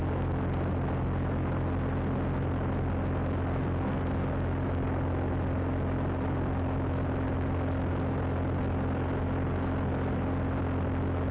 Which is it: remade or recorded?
recorded